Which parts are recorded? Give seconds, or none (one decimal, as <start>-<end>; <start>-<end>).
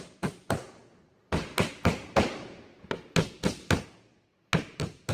0.0-5.1